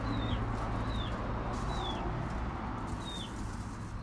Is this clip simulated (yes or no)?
no